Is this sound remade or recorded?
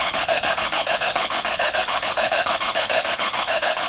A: remade